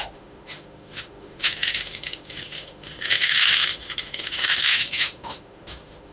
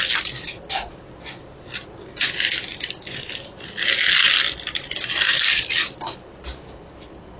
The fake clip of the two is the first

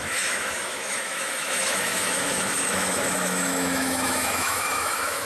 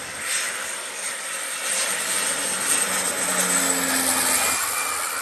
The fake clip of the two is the first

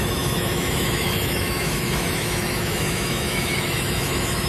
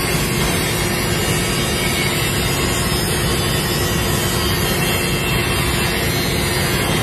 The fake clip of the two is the first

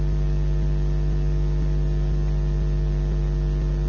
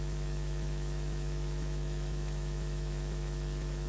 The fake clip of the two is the second